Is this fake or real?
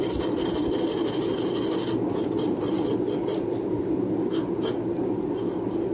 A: real